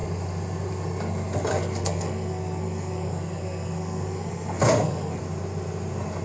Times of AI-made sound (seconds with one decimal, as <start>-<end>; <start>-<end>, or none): 1.5-5.2